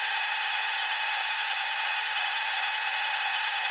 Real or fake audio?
fake